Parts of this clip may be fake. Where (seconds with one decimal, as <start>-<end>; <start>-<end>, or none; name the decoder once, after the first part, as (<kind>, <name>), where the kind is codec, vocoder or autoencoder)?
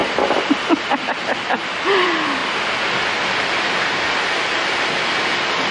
0.0-2.4 (vocoder, BigVGAN v2)